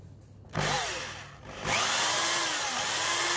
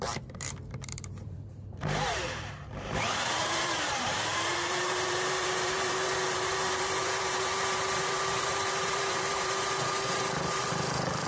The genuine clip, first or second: first